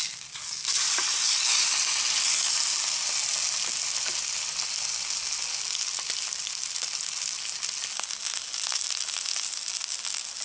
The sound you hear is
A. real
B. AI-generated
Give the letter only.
A